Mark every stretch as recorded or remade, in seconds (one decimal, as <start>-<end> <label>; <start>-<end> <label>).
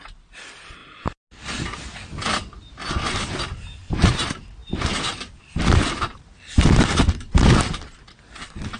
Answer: 0.0-8.8 recorded